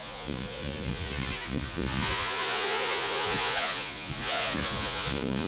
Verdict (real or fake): fake